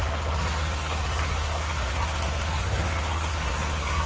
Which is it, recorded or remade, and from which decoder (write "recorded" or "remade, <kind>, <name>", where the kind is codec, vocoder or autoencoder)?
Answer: remade, codec, SNAC